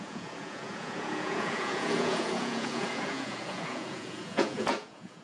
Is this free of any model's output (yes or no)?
no